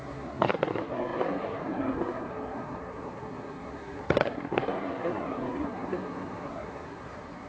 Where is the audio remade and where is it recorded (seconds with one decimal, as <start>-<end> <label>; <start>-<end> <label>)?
0.0-7.5 remade